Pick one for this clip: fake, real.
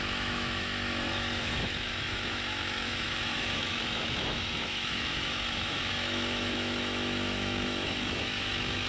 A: fake